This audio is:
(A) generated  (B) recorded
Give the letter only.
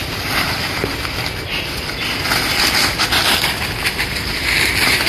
B